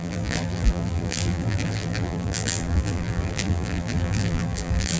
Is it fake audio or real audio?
fake